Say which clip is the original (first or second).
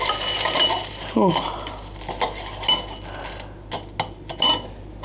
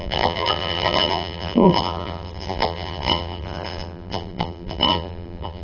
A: first